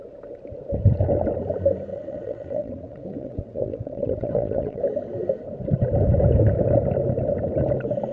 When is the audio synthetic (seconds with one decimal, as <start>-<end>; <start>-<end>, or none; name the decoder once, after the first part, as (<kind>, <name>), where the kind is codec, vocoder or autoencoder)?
1.9-4.8 (vocoder, WaveNeXt)